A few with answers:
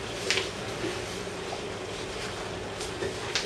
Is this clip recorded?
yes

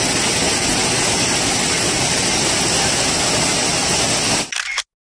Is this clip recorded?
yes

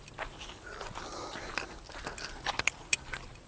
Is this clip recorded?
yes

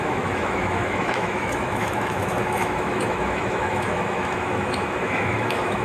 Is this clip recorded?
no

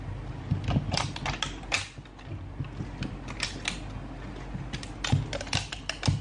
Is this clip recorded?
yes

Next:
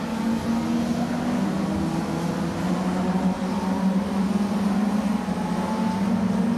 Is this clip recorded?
yes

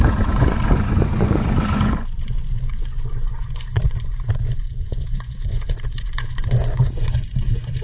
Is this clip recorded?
no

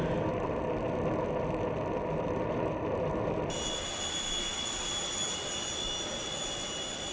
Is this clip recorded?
yes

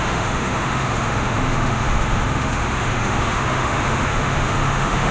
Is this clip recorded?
no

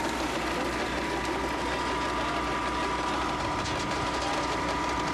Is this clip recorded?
yes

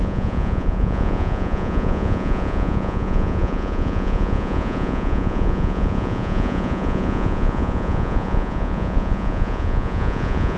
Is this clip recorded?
no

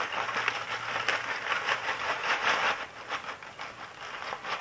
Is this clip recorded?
yes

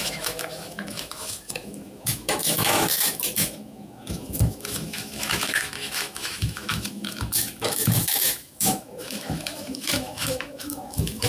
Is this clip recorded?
no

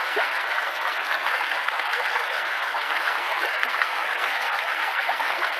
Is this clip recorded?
no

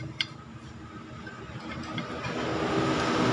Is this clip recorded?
yes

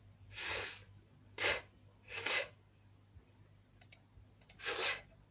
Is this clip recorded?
yes